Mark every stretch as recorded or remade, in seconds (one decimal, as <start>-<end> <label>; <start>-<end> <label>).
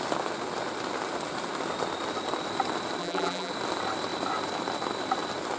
0.0-3.0 recorded; 3.0-3.5 remade; 3.5-5.6 recorded